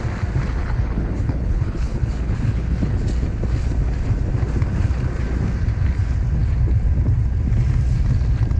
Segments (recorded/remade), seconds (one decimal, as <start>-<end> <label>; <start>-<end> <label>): 0.0-0.6 recorded; 0.6-3.0 remade; 3.0-8.6 recorded